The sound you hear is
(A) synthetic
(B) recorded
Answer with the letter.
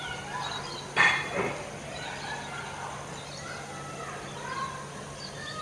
B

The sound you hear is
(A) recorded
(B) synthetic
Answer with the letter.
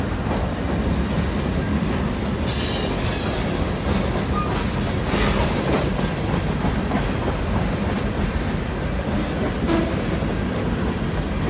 A